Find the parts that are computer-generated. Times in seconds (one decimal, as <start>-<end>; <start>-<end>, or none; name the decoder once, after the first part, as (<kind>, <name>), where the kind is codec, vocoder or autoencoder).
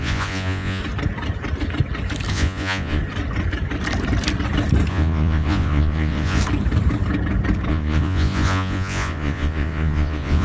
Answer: 0.0-0.8 (vocoder, Vocos); 2.3-3.0; 4.9-6.4; 7.7-10.4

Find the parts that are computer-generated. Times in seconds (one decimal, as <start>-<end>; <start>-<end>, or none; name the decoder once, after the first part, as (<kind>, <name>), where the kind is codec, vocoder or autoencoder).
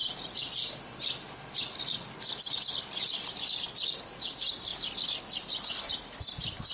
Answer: none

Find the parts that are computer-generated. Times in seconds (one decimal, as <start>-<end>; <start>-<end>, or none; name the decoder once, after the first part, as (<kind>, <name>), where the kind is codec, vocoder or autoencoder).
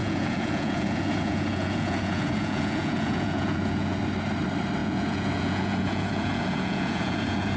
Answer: 0.0-4.0 (vocoder, Vocos); 4.8-7.6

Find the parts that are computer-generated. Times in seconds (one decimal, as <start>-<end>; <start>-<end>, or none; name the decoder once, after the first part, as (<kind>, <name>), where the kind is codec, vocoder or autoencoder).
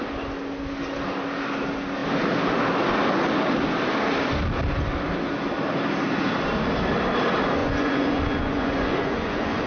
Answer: 7.6-9.7 (vocoder, Vocos)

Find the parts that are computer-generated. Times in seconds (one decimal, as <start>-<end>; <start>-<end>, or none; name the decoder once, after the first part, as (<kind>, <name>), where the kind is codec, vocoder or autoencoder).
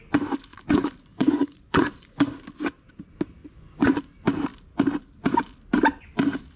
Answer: 0.5-2.3 (vocoder, Vocos); 3.4-4.0